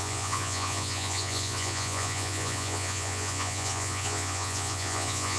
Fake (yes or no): yes